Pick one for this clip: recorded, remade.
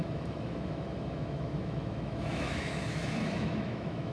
remade